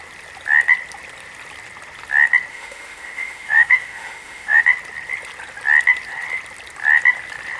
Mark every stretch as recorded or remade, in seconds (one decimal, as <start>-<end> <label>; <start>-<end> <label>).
0.0-2.5 recorded; 2.5-4.6 remade; 4.6-7.6 recorded